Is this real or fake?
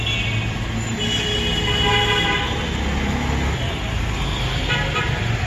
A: real